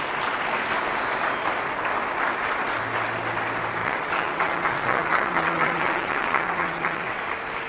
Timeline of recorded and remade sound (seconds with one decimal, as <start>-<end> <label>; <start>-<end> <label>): 0.0-3.8 recorded; 3.8-7.2 remade; 7.2-7.7 recorded